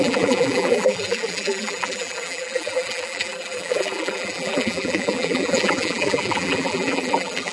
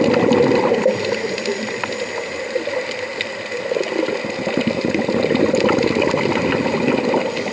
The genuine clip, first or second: second